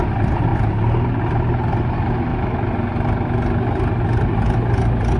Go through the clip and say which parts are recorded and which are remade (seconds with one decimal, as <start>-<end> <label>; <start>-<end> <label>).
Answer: 0.0-5.2 recorded